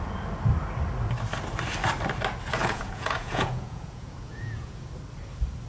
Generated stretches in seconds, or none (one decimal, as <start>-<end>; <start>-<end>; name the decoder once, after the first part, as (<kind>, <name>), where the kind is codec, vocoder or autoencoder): 2.6-4.8 (vocoder, Vocos)